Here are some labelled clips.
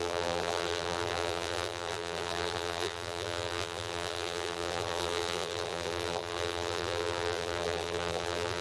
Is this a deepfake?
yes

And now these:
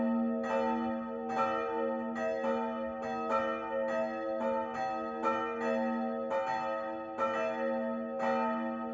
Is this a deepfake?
no